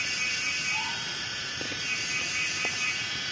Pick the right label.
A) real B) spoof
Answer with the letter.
B